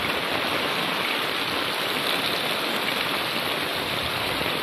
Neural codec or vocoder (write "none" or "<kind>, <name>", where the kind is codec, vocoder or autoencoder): none